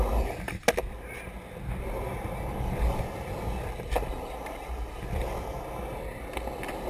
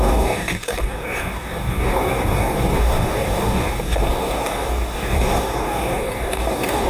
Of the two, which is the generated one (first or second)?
second